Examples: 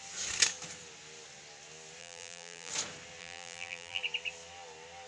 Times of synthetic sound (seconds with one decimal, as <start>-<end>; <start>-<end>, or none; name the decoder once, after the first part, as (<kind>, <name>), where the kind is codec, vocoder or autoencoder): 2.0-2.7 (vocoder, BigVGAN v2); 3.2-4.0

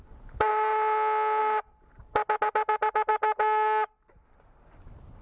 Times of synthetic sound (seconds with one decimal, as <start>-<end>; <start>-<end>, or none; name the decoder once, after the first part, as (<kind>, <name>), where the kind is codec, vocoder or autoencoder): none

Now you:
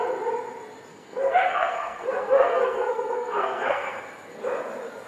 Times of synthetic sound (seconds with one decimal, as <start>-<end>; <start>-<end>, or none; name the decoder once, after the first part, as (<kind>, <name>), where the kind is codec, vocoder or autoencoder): 0.9-4.0 (codec, SNAC)

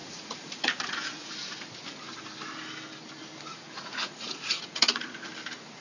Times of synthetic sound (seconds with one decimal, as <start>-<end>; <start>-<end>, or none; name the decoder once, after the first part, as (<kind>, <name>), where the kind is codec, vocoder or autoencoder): 0.0-1.3 (vocoder, Vocos); 3.5-5.3